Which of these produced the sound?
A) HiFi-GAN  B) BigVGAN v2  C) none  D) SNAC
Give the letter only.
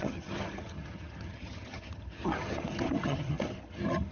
A